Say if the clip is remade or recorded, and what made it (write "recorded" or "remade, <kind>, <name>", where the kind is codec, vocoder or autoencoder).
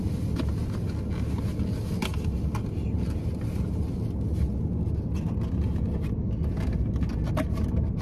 recorded